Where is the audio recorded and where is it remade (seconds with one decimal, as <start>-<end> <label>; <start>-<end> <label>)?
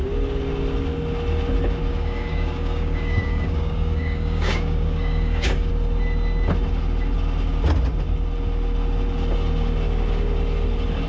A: 0.0-1.9 recorded; 1.9-5.7 remade; 5.7-11.1 recorded